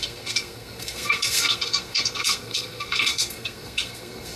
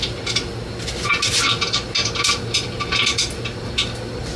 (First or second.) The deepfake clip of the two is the first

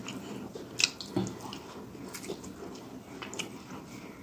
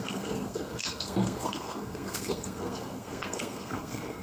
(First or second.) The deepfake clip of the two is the second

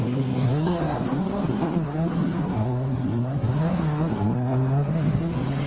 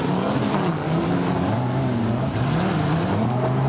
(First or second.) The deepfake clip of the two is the first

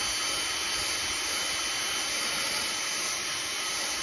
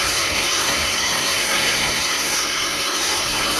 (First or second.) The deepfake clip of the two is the second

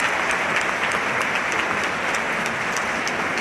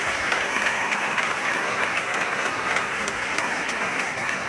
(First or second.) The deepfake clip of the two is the second